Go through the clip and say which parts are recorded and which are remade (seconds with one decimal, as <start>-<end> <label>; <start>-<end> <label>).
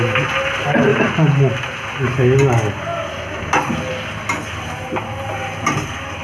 0.0-6.2 recorded